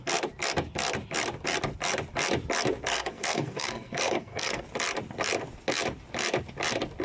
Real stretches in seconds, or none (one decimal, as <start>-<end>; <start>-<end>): 0.0-2.9; 4.6-7.0